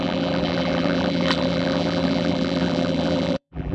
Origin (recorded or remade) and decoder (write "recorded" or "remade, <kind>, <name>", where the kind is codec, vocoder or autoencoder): remade, vocoder, BigVGAN v2